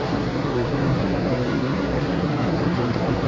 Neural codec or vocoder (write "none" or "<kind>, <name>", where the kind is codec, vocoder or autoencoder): codec, SNAC